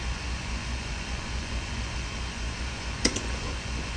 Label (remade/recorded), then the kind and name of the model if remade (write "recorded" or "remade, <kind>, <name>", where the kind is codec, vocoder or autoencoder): remade, vocoder, Vocos